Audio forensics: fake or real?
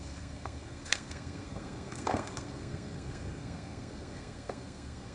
fake